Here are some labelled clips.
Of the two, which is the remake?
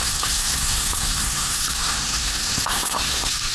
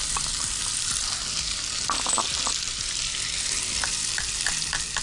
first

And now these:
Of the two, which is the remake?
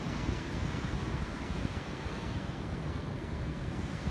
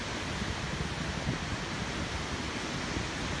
first